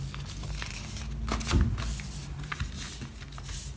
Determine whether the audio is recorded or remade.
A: recorded